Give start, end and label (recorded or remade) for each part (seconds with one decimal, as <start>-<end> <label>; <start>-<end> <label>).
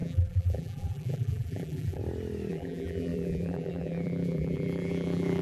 0.0-2.0 remade; 2.0-2.5 recorded; 2.5-5.4 remade